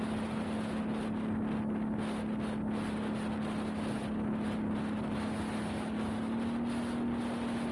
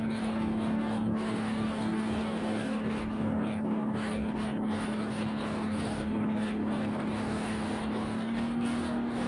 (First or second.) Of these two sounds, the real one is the first